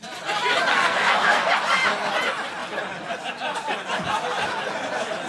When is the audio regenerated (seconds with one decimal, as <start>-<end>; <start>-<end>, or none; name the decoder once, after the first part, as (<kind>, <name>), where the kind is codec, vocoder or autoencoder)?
0.7-1.5 (codec, SNAC)